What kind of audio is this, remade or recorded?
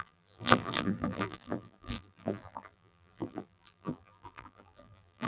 remade